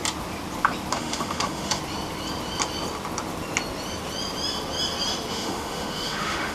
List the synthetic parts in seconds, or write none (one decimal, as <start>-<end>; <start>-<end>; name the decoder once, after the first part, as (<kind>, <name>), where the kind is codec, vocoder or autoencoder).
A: 0.9-1.8 (autoencoder, DAC-VAE); 5.3-6.5